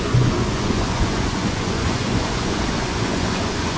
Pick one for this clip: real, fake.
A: fake